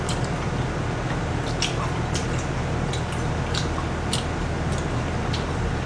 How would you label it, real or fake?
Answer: real